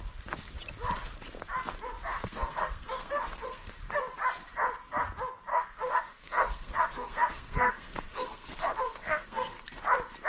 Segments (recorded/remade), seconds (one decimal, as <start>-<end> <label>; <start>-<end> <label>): 0.0-2.1 recorded; 2.1-3.7 remade; 3.7-5.5 recorded; 5.5-9.7 remade; 9.7-10.3 recorded